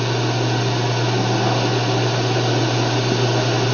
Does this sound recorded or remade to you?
recorded